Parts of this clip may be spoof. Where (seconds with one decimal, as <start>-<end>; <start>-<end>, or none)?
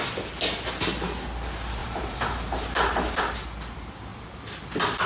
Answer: 1.8-3.2